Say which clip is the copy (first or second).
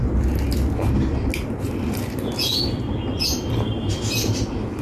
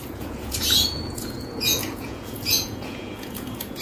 second